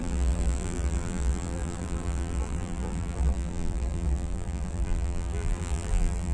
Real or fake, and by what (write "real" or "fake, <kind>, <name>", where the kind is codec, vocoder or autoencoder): fake, vocoder, BigVGAN v2